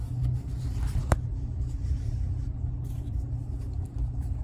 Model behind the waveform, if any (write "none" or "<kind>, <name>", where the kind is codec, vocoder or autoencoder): vocoder, BigVGAN v2